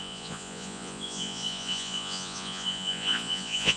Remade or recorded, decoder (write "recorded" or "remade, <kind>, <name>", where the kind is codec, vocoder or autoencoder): remade, vocoder, Vocos